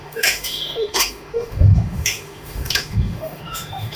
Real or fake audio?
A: fake